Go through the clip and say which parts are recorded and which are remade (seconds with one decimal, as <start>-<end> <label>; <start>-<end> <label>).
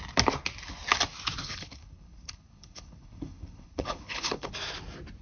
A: 0.0-1.4 recorded; 1.4-4.5 remade; 4.5-5.2 recorded